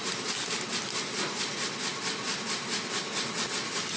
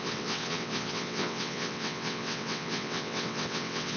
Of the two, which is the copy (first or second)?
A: second